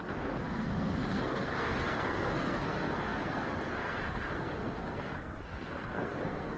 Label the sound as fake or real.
fake